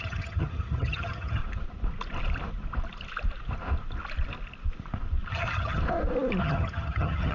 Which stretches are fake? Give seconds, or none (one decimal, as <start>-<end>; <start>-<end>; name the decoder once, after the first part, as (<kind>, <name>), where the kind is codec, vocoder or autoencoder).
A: 0.0-1.4 (vocoder, HiFi-GAN); 5.3-5.8; 6.4-7.3